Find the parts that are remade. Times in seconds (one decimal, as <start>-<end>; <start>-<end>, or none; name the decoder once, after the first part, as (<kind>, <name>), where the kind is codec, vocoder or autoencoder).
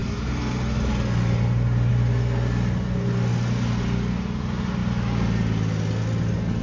none